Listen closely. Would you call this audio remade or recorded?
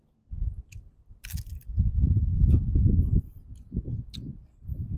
recorded